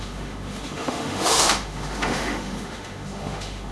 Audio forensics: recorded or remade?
remade